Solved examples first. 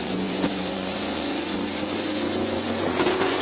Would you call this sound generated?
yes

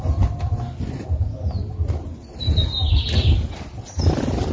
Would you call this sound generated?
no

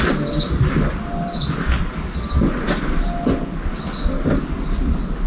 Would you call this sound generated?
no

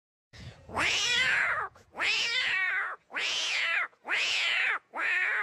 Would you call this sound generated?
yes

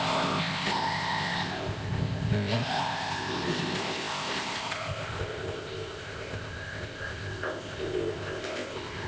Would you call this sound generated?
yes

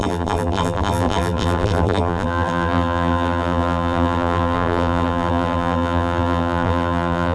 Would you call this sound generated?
yes